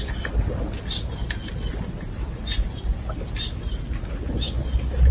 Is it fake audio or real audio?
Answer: real